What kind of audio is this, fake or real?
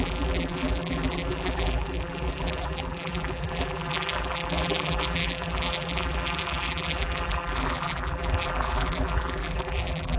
fake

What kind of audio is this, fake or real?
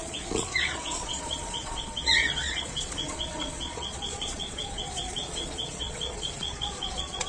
fake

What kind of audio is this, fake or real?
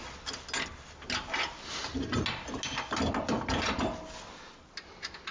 real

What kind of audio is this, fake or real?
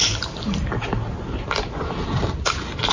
real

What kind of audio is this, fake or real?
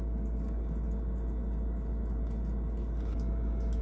real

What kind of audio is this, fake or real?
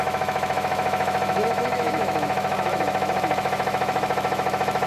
fake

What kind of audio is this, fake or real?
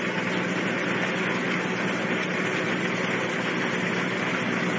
real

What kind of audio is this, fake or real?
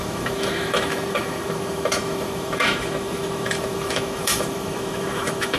fake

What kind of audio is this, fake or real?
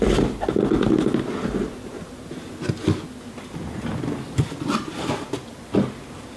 real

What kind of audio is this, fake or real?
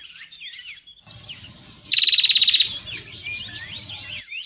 real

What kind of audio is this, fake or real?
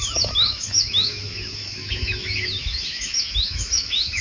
fake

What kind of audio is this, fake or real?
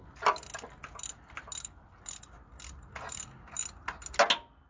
real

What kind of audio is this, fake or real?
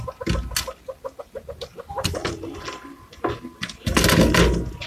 real